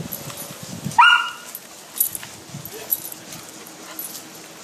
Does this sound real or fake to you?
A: real